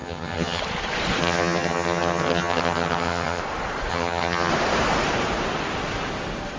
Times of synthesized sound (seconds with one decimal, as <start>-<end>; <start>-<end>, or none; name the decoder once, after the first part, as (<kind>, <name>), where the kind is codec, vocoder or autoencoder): 0.0-0.6 (vocoder, HiFi-GAN); 1.2-3.4; 3.9-4.5